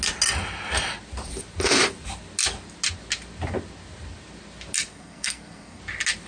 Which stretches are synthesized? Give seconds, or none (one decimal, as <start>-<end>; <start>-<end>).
4.9-5.8